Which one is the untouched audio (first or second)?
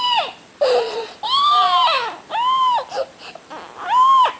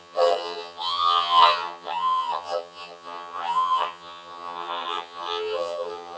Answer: first